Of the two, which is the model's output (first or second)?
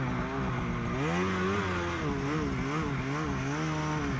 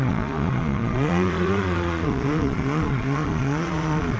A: second